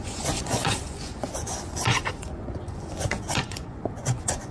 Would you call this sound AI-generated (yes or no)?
yes